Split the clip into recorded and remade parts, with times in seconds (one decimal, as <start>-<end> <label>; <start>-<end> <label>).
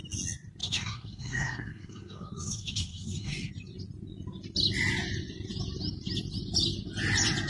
0.0-0.6 recorded; 0.6-3.5 remade; 3.5-7.5 recorded